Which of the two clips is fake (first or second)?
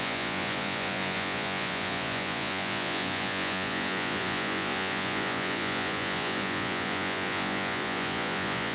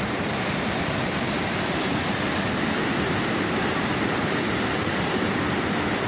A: first